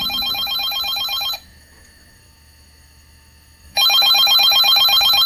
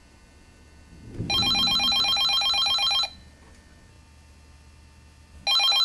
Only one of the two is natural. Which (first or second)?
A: second